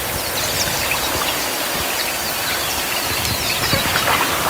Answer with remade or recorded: recorded